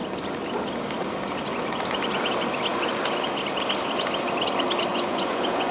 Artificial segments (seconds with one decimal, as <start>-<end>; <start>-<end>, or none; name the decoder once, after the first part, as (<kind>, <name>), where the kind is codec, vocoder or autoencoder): 4.9-5.7 (vocoder, Vocos)